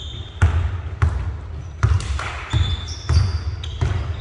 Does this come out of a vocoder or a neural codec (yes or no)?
no